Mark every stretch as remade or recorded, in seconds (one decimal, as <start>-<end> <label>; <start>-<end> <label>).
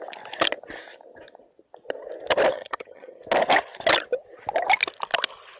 0.0-2.5 recorded; 2.5-3.2 remade; 3.2-5.6 recorded